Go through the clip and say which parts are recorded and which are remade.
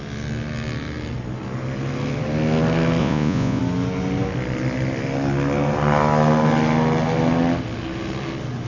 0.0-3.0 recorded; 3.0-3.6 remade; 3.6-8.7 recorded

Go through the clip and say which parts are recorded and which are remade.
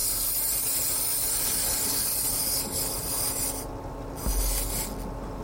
0.0-5.4 recorded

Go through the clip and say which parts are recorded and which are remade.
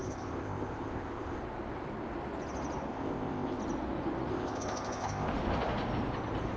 0.0-1.4 remade; 1.4-2.9 recorded; 2.9-3.6 remade; 3.6-4.3 recorded; 4.3-5.3 remade; 5.3-6.6 recorded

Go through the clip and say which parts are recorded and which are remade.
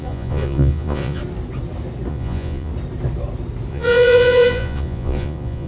0.0-1.2 remade; 1.2-2.1 recorded; 2.1-2.7 remade; 2.7-3.7 recorded; 3.7-5.7 remade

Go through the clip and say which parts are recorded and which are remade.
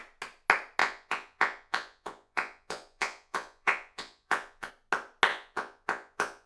0.0-0.8 recorded; 0.8-4.7 remade; 4.7-5.3 recorded; 5.3-6.5 remade